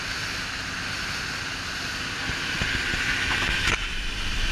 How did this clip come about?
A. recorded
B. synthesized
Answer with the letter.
A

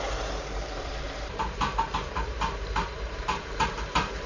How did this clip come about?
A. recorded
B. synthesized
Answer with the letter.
B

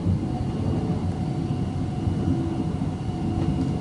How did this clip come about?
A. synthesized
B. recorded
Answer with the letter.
B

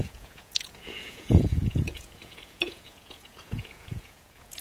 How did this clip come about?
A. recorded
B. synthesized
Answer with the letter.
B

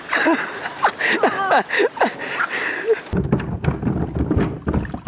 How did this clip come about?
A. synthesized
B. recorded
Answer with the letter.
B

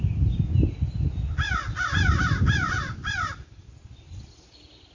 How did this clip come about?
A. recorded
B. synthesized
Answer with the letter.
A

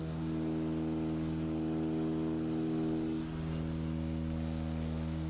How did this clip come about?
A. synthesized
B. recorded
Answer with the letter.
B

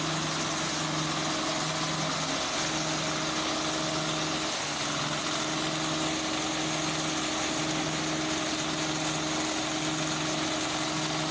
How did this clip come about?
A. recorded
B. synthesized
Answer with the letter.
A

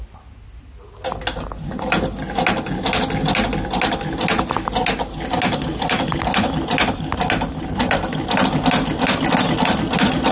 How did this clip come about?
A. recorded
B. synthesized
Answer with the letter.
A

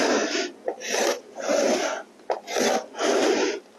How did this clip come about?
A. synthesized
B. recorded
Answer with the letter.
B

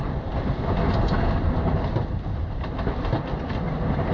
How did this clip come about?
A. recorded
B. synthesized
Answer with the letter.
A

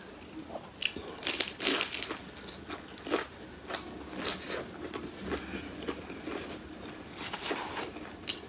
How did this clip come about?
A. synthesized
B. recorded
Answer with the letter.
B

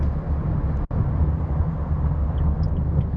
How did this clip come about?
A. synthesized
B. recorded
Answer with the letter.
B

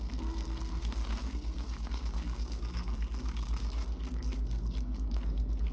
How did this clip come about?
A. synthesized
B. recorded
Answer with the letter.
A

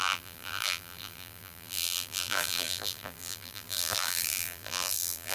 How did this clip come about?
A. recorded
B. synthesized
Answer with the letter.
B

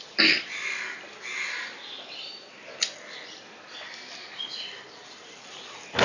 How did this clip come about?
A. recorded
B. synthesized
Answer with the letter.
A